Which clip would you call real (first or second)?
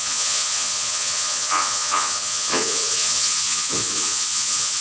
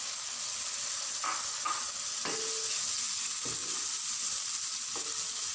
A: second